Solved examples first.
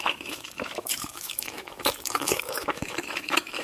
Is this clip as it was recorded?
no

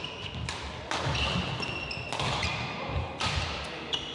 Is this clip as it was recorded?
yes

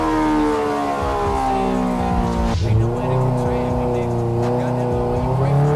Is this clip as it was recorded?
yes